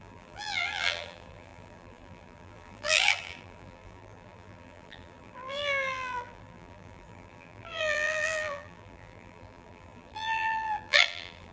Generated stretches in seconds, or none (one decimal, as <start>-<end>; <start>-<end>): 0.0-11.5